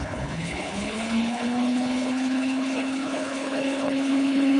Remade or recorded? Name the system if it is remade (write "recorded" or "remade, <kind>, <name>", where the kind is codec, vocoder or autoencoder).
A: remade, codec, HILCodec